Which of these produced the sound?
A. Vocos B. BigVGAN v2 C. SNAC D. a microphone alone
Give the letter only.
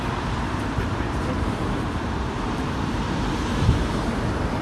B